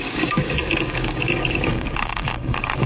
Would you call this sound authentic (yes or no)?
no